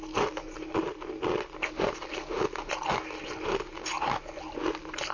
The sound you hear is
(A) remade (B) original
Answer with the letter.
B